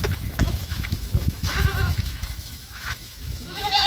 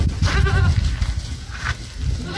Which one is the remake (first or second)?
first